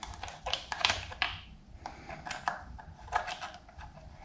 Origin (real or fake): real